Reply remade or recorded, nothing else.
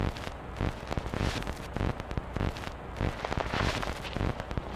recorded